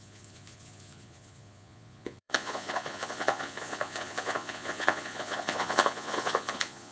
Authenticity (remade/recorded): remade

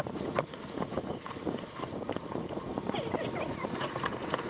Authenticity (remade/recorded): remade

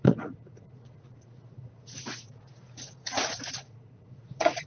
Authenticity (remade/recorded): remade